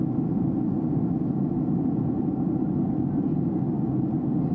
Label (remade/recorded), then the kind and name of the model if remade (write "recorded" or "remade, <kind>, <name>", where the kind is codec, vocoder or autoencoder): recorded